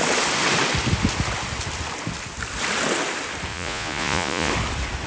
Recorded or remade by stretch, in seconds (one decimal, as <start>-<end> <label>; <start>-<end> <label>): 0.0-3.5 recorded; 3.5-4.5 remade; 4.5-5.1 recorded